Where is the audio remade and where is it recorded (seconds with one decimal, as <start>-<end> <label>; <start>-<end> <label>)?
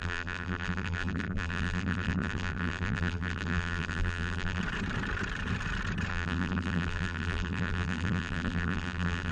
0.0-4.6 remade; 4.6-6.1 recorded; 6.1-9.3 remade